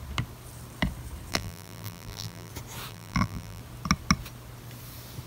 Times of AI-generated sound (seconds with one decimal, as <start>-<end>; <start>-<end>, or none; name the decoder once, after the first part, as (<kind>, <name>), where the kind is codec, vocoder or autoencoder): 1.3-2.5 (vocoder, BigVGAN v2); 2.9-3.6